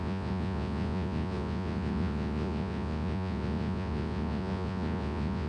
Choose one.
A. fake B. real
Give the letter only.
A